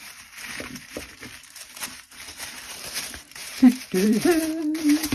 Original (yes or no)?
no